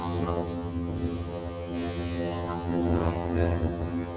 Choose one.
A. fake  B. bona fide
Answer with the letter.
A